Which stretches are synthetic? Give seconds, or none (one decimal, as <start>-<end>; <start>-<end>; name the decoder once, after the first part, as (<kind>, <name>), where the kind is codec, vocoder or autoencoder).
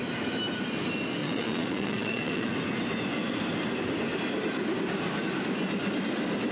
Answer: 1.2-2.5 (vocoder, Vocos)